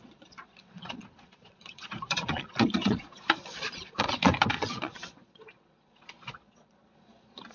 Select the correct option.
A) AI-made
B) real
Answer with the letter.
A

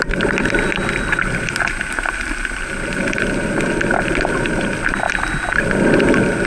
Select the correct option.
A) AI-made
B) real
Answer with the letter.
B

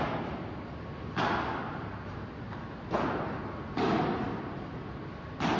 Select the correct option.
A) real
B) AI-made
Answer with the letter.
A